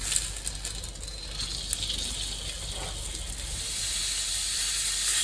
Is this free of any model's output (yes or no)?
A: yes